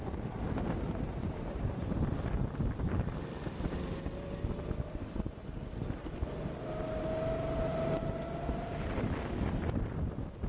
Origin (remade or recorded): recorded